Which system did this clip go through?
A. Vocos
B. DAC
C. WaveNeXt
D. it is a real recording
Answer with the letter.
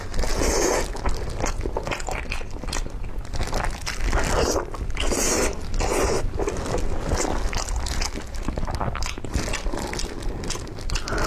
D